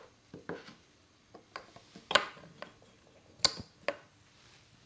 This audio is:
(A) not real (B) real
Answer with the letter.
B